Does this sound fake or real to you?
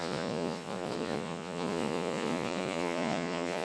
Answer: fake